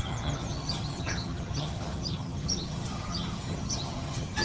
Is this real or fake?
fake